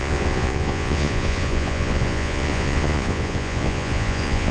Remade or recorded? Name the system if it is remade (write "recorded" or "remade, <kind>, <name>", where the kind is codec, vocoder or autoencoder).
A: remade, vocoder, Vocos